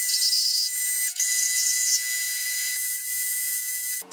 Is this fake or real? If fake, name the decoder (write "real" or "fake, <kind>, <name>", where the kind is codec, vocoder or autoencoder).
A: fake, vocoder, Vocos